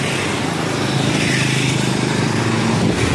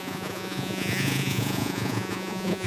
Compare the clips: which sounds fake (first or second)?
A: second